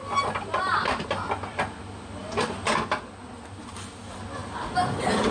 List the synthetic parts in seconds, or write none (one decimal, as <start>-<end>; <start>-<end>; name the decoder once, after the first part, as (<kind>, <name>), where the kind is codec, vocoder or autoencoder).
none